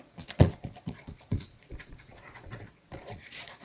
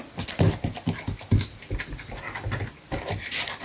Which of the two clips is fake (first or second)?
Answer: first